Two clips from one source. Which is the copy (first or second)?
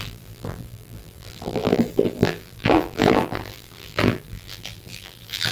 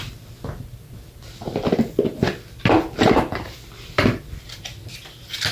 first